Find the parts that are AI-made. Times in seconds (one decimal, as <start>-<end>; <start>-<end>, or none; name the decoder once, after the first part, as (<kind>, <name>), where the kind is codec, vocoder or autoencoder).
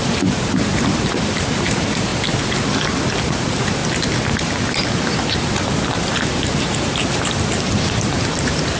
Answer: 0.0-2.1 (vocoder, BigVGAN v2); 3.2-3.8; 6.4-8.8